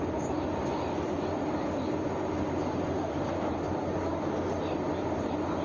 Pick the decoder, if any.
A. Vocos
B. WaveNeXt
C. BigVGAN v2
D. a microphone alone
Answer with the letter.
D